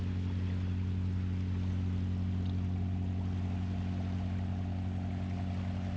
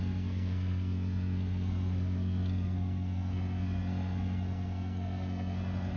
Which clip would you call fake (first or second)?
second